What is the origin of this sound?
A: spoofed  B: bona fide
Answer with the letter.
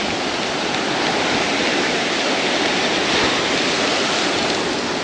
B